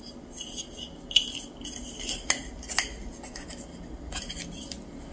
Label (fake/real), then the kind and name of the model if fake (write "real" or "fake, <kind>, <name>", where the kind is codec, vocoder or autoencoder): real